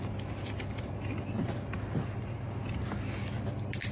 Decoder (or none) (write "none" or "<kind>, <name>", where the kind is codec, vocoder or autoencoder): none